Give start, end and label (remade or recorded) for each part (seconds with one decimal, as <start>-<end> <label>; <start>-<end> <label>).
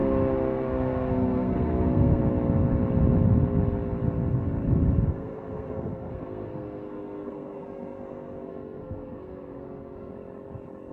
0.0-2.2 remade; 2.2-5.1 recorded; 5.1-10.1 remade; 10.1-10.9 recorded